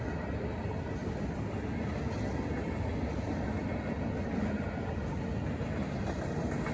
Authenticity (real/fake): real